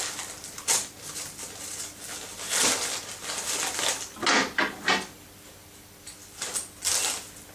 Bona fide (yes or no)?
yes